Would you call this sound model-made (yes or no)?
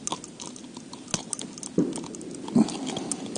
no